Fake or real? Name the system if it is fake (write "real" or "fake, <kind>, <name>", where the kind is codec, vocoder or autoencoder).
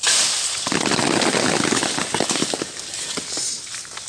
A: real